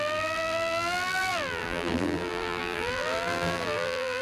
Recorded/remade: remade